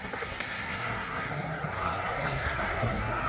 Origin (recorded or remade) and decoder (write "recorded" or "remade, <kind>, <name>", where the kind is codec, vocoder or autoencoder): remade, codec, SNAC